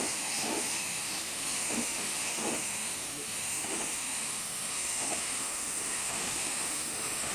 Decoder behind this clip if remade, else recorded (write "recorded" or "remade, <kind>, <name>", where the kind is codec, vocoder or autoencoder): remade, autoencoder, DAC-VAE